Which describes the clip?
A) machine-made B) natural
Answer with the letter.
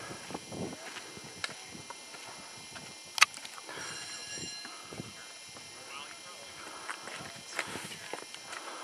B